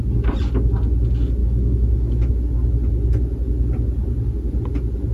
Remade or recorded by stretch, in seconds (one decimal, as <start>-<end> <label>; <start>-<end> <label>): 0.0-1.4 recorded; 1.4-2.3 remade; 2.3-5.1 recorded